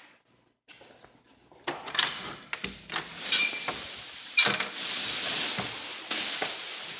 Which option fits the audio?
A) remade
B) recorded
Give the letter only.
B